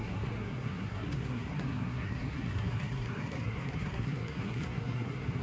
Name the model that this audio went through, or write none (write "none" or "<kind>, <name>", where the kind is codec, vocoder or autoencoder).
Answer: codec, SNAC